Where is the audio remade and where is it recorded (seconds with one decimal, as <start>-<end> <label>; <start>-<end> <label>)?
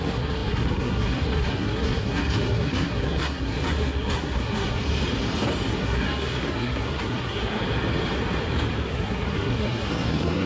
0.0-4.8 remade; 4.8-5.7 recorded; 5.7-7.6 remade; 7.6-8.9 recorded; 8.9-10.5 remade